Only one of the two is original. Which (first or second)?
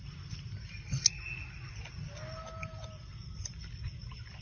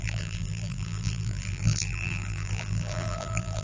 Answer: first